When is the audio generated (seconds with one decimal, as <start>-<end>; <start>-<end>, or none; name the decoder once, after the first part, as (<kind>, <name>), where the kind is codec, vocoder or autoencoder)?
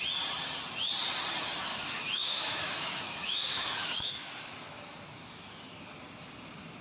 1.7-5.8 (autoencoder, DAC-VAE)